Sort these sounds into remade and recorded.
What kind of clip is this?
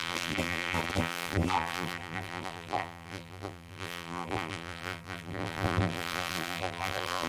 remade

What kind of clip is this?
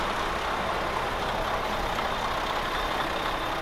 recorded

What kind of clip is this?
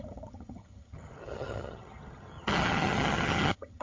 remade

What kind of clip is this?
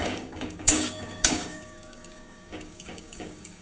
remade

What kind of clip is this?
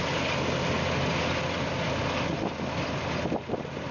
recorded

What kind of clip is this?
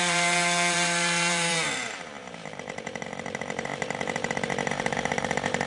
remade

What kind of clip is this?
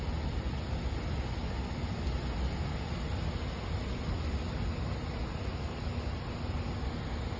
recorded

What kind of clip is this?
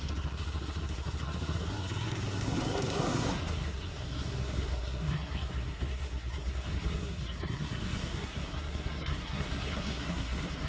remade